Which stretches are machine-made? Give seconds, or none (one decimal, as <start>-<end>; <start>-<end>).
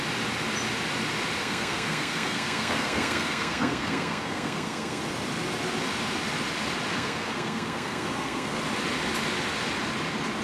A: 1.4-5.0; 6.9-8.6